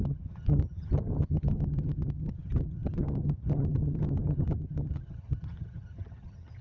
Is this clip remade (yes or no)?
yes